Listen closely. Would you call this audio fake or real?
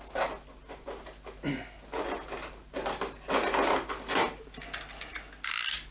real